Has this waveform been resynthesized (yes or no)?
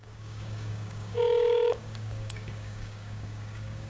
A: yes